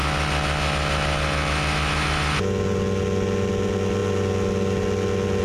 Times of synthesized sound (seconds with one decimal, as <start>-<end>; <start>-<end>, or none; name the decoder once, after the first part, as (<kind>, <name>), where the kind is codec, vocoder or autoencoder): none